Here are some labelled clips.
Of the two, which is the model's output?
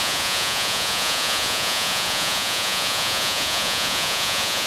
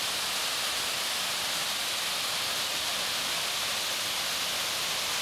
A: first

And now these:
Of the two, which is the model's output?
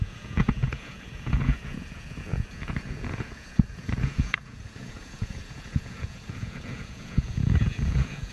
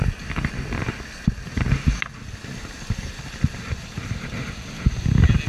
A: first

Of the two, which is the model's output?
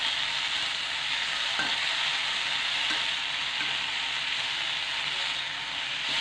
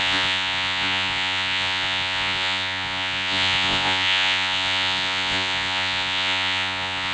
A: second